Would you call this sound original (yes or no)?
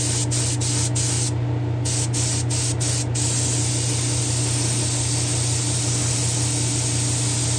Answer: yes